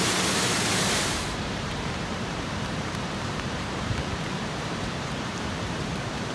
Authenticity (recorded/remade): remade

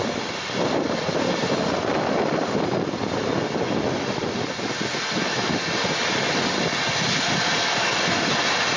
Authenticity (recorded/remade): recorded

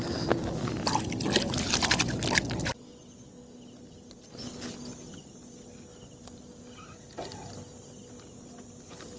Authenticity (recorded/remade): recorded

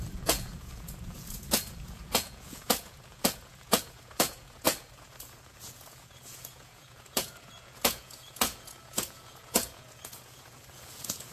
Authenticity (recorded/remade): remade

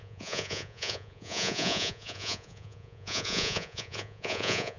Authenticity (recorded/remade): remade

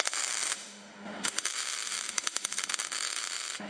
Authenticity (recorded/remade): remade